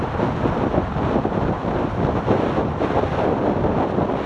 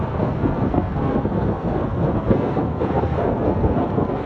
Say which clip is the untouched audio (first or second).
first